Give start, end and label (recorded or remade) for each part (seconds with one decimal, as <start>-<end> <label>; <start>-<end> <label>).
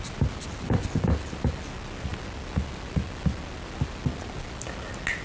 0.0-5.2 recorded